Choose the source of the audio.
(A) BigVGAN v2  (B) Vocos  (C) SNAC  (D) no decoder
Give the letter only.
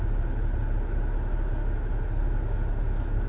D